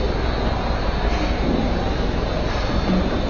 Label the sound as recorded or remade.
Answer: recorded